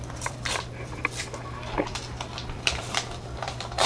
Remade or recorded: remade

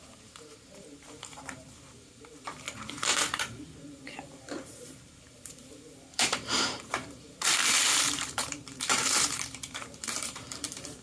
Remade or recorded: remade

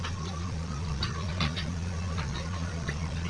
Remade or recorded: remade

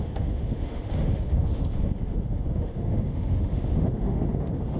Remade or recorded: remade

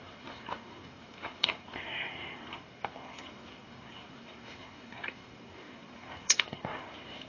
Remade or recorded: remade